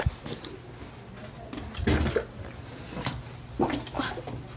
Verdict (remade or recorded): recorded